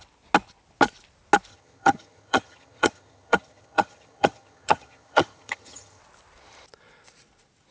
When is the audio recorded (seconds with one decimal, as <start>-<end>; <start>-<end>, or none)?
0.0-1.5; 6.0-7.7